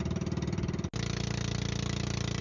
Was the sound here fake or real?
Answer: real